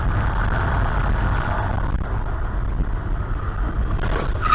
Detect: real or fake real